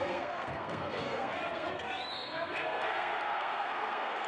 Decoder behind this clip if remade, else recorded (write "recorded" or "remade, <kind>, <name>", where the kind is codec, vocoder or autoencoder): remade, codec, SNAC